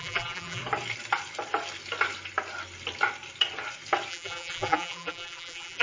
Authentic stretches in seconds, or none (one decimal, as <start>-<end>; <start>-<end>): 0.6-4.1